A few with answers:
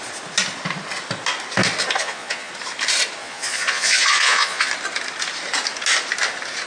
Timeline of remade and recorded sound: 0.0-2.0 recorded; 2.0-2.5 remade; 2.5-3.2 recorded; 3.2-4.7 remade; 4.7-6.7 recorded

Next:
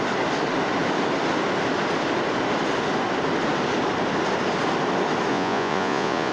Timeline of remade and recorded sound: 0.0-5.3 recorded; 5.3-6.3 remade

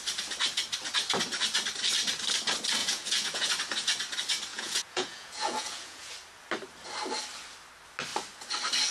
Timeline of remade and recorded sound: 0.0-2.8 recorded; 2.8-3.5 remade; 3.5-4.5 recorded; 4.5-6.1 remade; 6.1-8.9 recorded

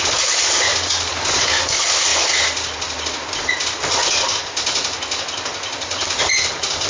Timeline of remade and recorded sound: 0.0-6.9 recorded